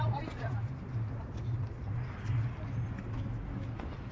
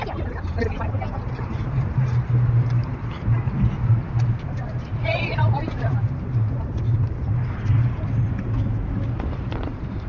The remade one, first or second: second